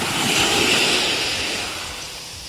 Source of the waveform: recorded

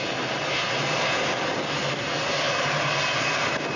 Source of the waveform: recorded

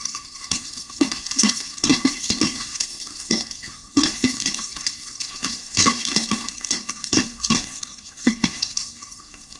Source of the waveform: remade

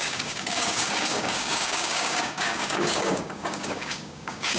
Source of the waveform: remade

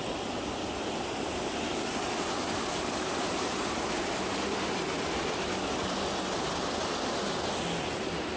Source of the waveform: recorded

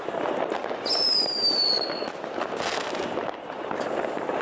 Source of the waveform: recorded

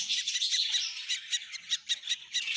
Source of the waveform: recorded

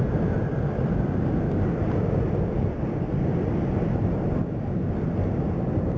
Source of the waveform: recorded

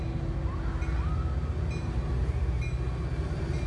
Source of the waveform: recorded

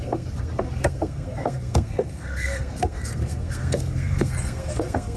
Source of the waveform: remade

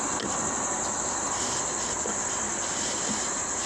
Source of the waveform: recorded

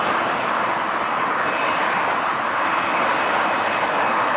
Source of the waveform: recorded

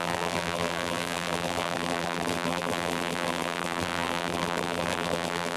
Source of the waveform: remade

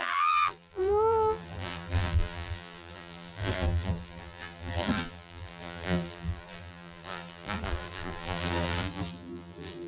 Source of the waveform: remade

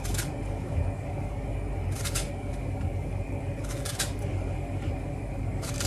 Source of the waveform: remade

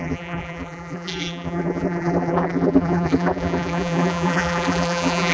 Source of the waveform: remade